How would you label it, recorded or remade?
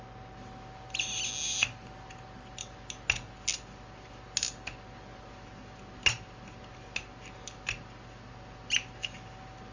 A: recorded